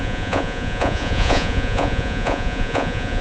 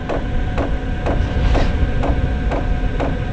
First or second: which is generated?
first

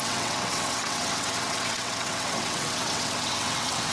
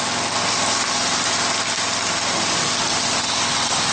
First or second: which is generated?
first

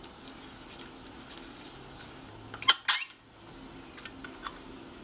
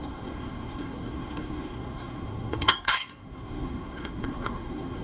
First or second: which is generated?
second